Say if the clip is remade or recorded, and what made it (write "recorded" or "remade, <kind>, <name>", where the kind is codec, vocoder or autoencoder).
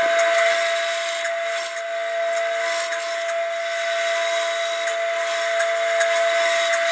recorded